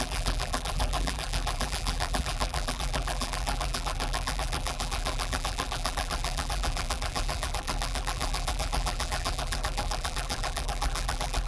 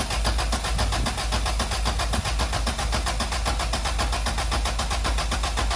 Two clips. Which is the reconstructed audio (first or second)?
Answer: first